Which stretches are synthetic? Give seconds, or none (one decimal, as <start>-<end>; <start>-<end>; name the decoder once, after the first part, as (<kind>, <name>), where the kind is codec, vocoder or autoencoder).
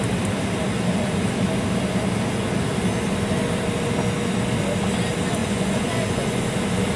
5.4-6.5 (vocoder, Vocos)